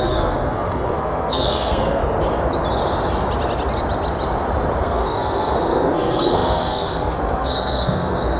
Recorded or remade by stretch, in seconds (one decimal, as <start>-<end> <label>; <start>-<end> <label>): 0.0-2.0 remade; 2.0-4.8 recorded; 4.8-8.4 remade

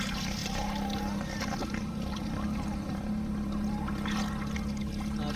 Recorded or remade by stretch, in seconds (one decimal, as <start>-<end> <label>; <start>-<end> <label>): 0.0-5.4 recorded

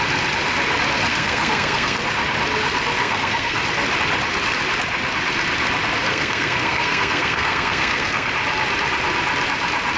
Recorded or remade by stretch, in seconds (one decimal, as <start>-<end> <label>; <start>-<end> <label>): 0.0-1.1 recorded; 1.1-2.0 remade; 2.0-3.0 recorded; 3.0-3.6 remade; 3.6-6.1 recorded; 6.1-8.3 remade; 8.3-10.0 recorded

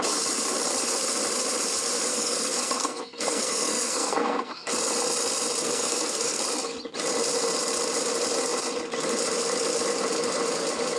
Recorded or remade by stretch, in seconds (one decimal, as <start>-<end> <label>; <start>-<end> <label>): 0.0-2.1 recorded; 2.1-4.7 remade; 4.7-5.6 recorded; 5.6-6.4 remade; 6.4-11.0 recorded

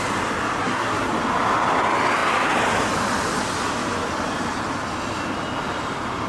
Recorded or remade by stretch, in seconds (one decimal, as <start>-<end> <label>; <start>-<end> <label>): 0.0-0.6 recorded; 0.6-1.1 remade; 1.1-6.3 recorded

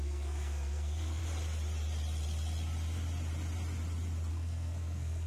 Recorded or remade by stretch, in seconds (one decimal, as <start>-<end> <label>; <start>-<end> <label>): 0.0-1.2 remade; 1.2-4.3 recorded; 4.3-5.3 remade

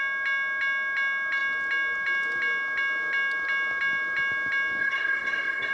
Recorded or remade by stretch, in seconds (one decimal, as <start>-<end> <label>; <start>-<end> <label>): 0.0-4.8 recorded; 4.8-5.7 remade